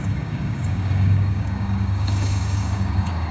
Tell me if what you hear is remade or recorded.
remade